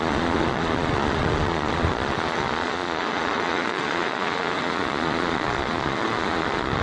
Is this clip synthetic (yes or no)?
yes